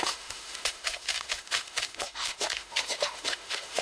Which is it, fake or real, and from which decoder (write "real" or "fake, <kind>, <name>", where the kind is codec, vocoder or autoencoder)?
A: fake, autoencoder, DAC-VAE